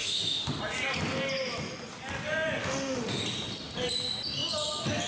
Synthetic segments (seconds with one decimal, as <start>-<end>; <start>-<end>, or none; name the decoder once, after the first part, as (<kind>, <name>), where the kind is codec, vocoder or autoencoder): 0.0-0.6 (autoencoder, DAC-VAE); 2.6-3.2